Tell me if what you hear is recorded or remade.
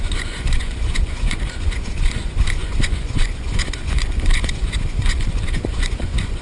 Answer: remade